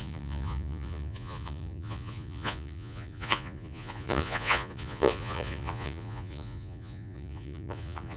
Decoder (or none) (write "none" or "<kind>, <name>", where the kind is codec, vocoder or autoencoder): vocoder, Vocos